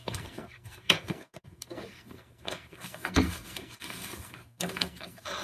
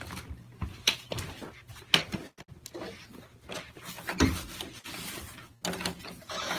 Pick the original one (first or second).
second